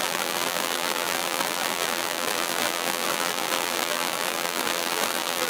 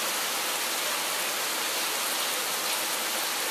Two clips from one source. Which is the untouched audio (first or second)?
second